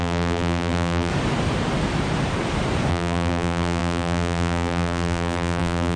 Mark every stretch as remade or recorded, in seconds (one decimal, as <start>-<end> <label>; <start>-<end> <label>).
0.0-1.1 remade; 1.1-2.9 recorded; 2.9-6.0 remade

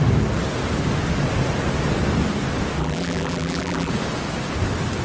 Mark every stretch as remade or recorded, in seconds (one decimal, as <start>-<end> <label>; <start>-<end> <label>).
0.0-2.8 recorded; 2.8-3.9 remade; 3.9-5.0 recorded

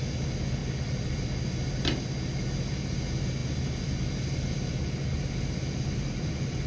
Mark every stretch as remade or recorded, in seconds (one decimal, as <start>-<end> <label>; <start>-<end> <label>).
0.0-0.6 recorded; 0.6-1.4 remade; 1.4-3.4 recorded; 3.4-6.7 remade

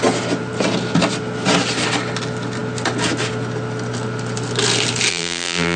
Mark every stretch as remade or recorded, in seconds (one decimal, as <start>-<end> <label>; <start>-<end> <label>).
0.0-5.1 recorded; 5.1-5.8 remade